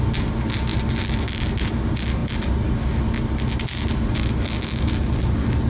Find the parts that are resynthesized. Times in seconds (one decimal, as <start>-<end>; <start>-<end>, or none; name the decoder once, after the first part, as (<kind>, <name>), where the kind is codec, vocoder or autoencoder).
none